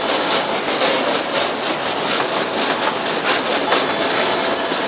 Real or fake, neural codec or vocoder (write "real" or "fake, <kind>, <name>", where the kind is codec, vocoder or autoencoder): real